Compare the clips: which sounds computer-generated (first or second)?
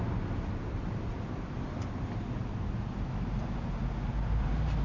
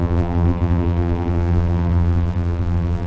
second